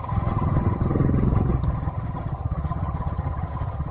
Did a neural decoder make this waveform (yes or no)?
yes